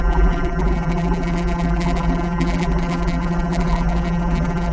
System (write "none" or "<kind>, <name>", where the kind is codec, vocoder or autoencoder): vocoder, BigVGAN v2